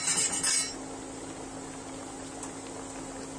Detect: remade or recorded recorded